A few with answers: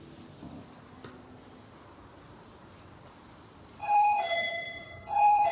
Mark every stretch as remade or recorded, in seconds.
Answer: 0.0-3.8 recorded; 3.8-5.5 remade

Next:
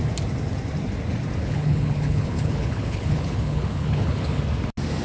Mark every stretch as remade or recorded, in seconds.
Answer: 0.0-1.4 recorded; 1.4-4.4 remade; 4.4-5.0 recorded